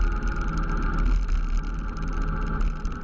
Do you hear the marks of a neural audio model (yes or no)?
no